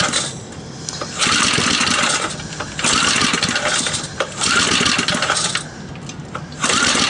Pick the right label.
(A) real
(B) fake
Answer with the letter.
A